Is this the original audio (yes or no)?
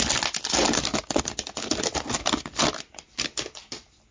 yes